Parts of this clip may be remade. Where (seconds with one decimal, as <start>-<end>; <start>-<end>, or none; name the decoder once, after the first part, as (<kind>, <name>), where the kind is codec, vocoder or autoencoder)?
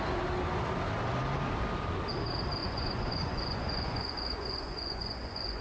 2.6-5.6 (vocoder, Vocos)